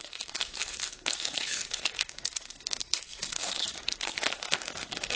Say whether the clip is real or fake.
fake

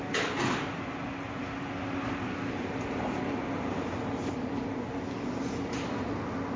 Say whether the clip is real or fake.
real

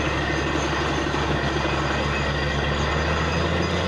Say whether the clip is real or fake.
real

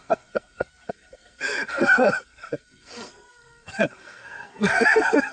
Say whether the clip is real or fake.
fake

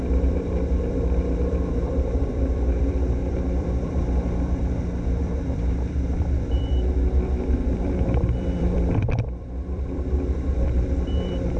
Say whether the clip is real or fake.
fake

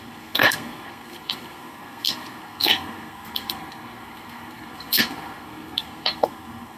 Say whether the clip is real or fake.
fake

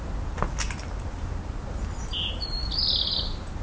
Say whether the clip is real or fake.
real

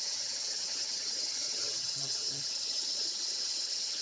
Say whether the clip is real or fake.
fake